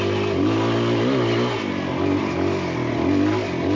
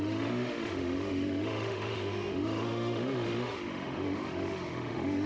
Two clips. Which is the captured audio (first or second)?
first